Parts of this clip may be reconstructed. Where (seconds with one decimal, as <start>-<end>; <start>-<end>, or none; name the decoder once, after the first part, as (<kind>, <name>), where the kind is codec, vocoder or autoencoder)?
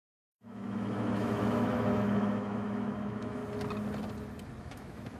0.0-3.4 (autoencoder, DAC-VAE); 4.6-5.2